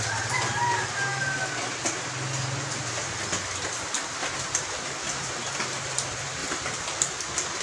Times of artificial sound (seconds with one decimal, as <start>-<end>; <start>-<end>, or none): none